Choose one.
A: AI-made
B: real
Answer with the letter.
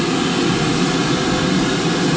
B